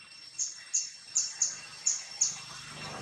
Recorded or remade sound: recorded